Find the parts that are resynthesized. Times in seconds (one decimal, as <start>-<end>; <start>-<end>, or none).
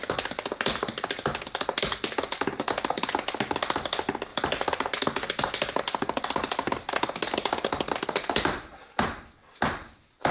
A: none